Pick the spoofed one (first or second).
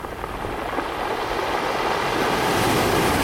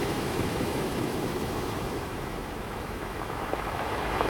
second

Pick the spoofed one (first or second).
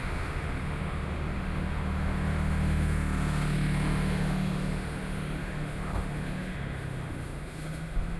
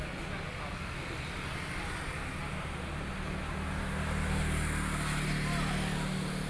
first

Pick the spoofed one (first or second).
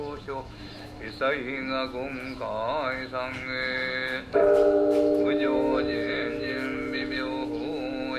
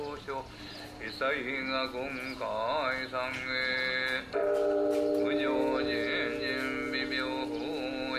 first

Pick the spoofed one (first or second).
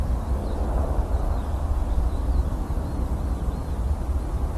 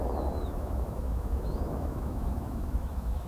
second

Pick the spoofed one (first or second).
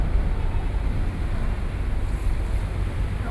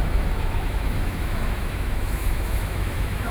second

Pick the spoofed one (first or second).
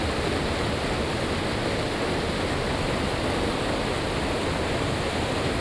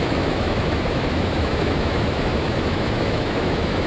second